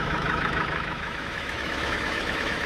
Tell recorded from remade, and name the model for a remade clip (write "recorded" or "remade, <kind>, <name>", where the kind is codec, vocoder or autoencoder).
remade, autoencoder, DAC-VAE